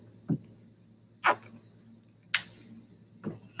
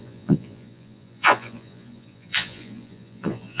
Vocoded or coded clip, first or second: second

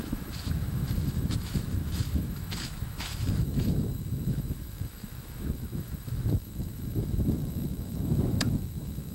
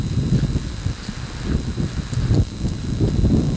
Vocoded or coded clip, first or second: first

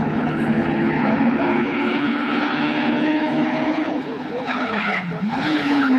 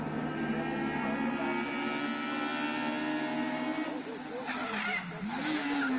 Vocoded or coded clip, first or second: first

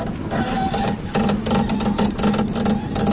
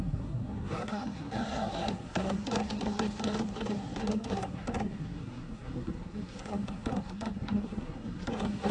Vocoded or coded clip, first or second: second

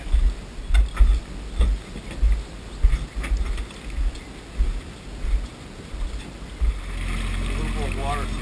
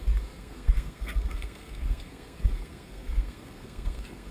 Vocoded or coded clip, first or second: second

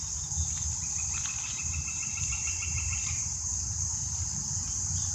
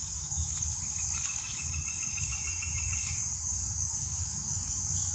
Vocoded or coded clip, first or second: second